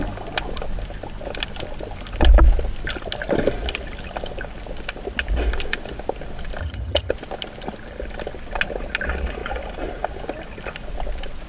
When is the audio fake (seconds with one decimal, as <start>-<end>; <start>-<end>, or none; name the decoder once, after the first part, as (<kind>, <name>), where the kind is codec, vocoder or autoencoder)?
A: 6.6-7.1 (vocoder, HiFi-GAN)